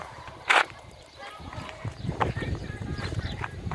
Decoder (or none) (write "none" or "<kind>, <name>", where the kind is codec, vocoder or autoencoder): vocoder, BigVGAN v2